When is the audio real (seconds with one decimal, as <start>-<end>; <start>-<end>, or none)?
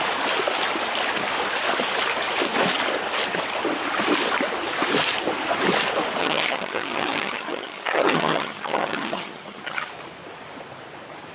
0.0-6.2; 9.9-11.3